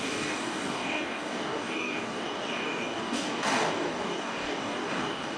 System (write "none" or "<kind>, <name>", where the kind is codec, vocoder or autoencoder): codec, DAC